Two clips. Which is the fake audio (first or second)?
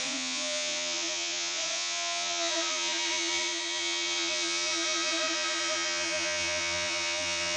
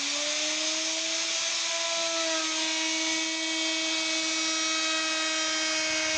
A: first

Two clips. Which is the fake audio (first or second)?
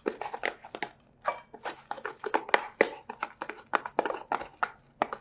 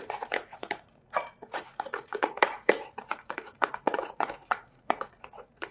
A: second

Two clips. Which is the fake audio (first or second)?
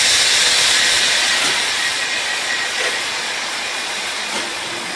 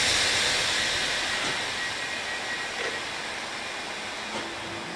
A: first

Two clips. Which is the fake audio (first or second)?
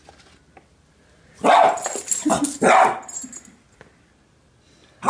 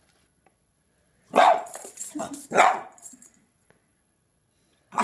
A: second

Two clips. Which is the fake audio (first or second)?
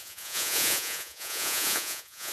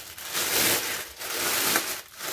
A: first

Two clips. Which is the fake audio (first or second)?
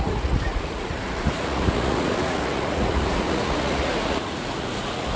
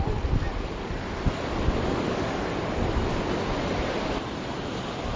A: first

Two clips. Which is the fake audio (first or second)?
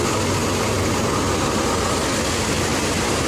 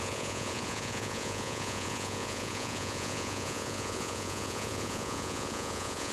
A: second